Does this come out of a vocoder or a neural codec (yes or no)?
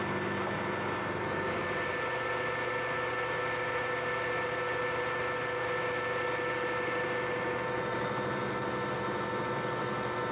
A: no